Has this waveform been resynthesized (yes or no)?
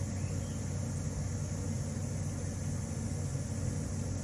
no